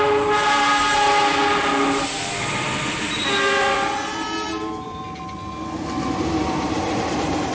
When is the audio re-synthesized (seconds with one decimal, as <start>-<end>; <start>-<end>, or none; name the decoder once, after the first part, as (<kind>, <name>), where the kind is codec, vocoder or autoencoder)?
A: 6.4-7.5 (vocoder, BigVGAN v2)